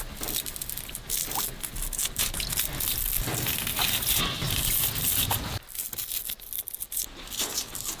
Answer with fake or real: real